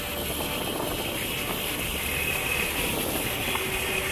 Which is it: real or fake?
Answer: real